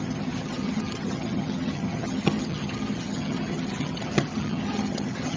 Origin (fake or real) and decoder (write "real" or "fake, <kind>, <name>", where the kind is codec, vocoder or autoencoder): fake, vocoder, HiFi-GAN